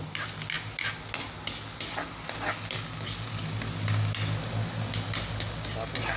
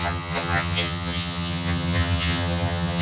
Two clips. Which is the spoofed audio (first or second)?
second